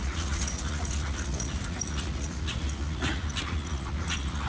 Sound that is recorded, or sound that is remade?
remade